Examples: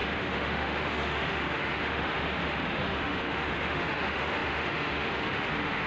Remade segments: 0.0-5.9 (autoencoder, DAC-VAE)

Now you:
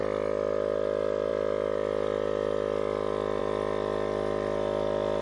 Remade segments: none

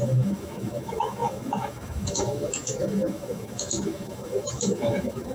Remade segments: 0.0-5.3 (autoencoder, DAC-VAE)